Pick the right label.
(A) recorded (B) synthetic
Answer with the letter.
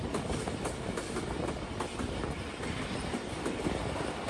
A